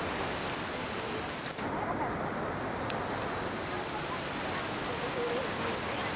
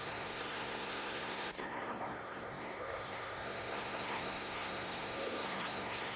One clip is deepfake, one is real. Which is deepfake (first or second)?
second